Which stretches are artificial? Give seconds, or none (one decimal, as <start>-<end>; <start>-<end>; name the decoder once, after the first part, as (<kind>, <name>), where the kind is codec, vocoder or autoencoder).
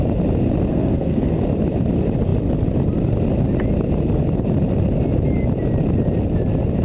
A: 0.7-1.4 (codec, SNAC)